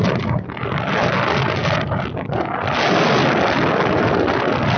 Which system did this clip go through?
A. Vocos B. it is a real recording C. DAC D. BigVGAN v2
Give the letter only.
B